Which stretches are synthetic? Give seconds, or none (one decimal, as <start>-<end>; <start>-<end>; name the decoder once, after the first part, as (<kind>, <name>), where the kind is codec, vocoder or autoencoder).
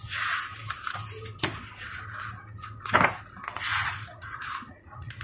3.7-5.2 (vocoder, Vocos)